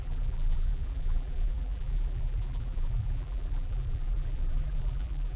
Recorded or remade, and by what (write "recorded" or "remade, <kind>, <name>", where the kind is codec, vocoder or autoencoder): remade, vocoder, BigVGAN v2